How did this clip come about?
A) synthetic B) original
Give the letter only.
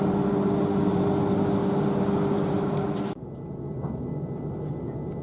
B